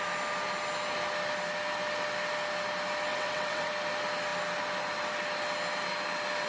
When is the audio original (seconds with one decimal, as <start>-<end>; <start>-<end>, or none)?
0.0-3.1; 3.7-6.5